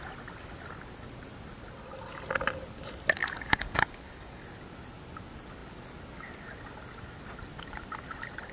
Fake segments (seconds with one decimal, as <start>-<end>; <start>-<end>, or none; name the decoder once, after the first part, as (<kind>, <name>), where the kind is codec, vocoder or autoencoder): 3.2-4.4 (codec, DAC)